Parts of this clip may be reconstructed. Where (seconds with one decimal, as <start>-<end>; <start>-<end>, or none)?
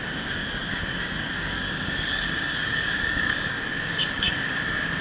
0.0-5.0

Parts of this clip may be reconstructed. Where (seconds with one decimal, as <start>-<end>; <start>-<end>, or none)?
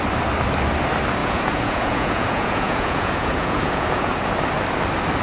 1.2-4.3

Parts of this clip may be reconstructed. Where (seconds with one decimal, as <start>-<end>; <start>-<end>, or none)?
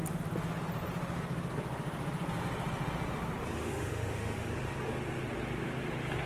3.6-4.5